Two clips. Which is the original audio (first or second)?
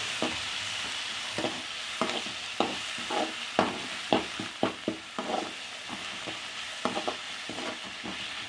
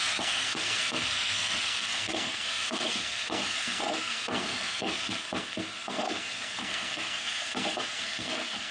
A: first